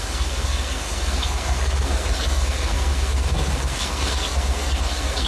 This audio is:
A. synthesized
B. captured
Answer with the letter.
A